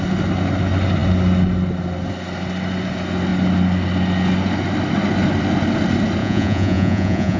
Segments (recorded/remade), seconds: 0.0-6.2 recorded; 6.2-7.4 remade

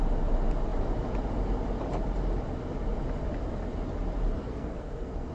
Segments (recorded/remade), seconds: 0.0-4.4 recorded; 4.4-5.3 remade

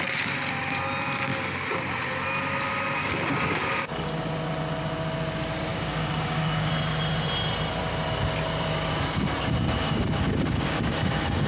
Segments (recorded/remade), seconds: 0.0-1.3 recorded; 1.3-1.9 remade; 1.9-3.0 recorded; 3.0-4.2 remade; 4.2-5.7 recorded; 5.7-6.7 remade; 6.7-9.8 recorded; 9.8-11.5 remade

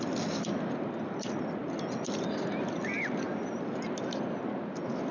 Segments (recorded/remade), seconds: 0.0-5.1 recorded

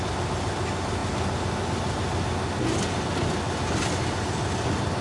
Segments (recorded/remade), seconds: 0.0-5.0 recorded

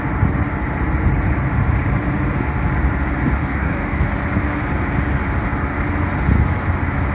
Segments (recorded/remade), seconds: 0.0-3.4 recorded; 3.4-4.1 remade; 4.1-7.1 recorded

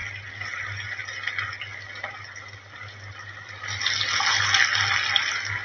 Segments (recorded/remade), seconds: 0.0-5.6 recorded